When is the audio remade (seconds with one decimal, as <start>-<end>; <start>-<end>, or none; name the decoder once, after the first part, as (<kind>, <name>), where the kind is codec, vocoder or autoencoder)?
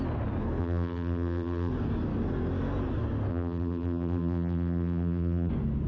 0.6-1.7 (vocoder, BigVGAN v2); 3.3-5.5